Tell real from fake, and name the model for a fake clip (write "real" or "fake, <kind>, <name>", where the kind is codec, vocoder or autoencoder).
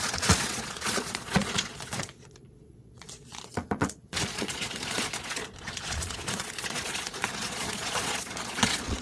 fake, vocoder, Vocos